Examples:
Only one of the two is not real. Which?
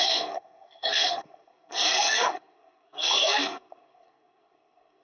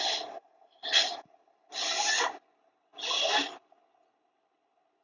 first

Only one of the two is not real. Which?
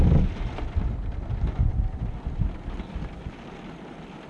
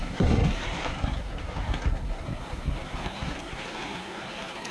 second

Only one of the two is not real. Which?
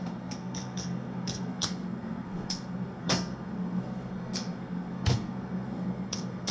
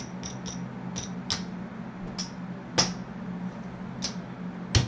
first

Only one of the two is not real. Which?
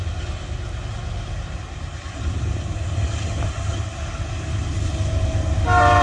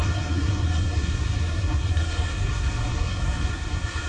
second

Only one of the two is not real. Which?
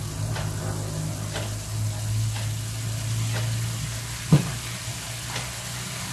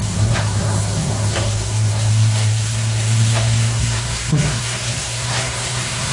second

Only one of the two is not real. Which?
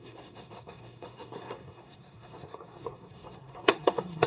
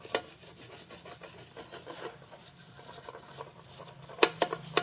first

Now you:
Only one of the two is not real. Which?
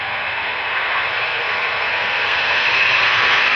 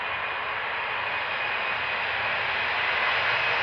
first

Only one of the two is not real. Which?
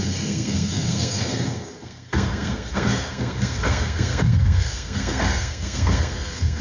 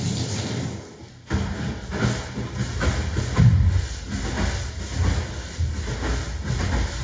first